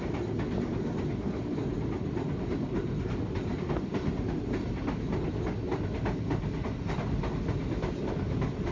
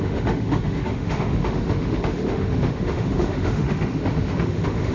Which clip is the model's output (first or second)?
second